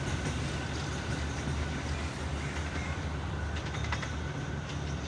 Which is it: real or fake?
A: real